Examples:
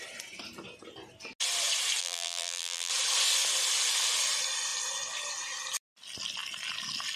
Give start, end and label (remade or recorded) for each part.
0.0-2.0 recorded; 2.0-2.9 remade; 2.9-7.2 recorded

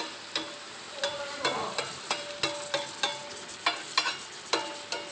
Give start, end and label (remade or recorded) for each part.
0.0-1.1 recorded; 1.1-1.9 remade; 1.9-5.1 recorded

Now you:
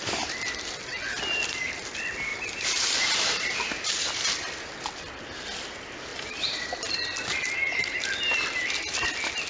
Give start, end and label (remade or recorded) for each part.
0.0-2.3 recorded; 2.3-3.5 remade; 3.5-6.1 recorded; 6.1-6.6 remade; 6.6-9.5 recorded

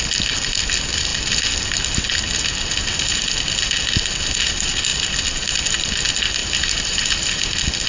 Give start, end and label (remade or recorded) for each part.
0.0-6.4 recorded; 6.4-7.4 remade; 7.4-7.9 recorded

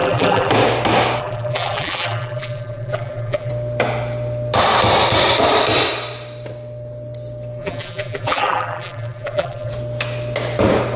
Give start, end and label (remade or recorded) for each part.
0.0-0.5 remade; 0.5-1.2 recorded; 1.2-3.5 remade; 3.5-7.6 recorded; 7.6-9.7 remade; 9.7-11.0 recorded